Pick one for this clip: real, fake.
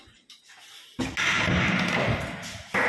real